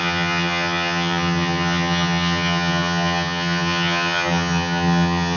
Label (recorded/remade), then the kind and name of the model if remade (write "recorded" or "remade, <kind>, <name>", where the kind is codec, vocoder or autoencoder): remade, vocoder, HiFi-GAN